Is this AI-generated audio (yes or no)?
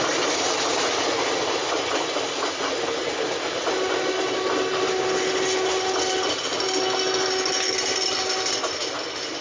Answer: no